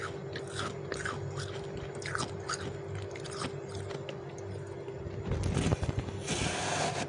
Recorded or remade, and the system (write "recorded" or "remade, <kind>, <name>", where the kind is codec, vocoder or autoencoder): recorded